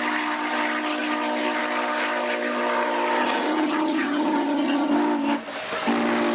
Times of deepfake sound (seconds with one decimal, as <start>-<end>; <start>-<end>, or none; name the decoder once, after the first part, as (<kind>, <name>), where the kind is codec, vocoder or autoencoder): 3.2-4.9 (vocoder, HiFi-GAN)

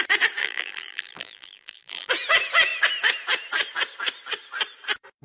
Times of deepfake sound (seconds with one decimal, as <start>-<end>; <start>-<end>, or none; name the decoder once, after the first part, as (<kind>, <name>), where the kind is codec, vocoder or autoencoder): 0.4-2.1 (vocoder, BigVGAN v2)